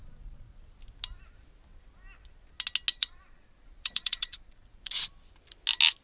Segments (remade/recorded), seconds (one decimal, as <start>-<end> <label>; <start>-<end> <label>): 0.0-0.6 remade; 0.6-2.9 recorded; 2.9-5.1 remade; 5.1-6.0 recorded